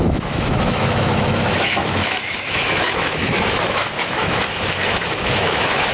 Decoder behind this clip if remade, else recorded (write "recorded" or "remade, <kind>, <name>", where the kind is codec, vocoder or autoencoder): remade, autoencoder, DAC-VAE